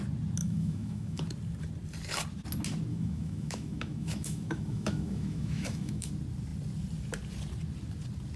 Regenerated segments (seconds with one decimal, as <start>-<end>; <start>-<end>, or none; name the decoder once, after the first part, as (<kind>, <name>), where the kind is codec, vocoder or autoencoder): 0.4-1.2 (autoencoder, DAC-VAE); 2.9-6.1